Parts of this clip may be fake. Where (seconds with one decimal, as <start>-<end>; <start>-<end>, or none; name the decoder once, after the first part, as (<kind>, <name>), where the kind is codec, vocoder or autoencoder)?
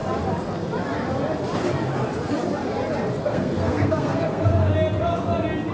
3.2-4.7 (codec, SNAC)